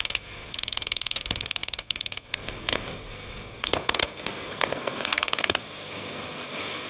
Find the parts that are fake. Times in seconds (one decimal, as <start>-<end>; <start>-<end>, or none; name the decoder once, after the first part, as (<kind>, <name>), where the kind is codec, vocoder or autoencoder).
0.0-6.9 (codec, SNAC)